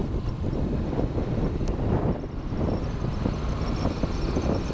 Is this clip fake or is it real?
real